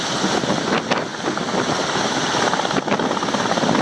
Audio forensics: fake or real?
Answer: real